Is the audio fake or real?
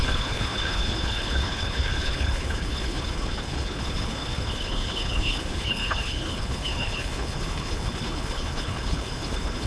fake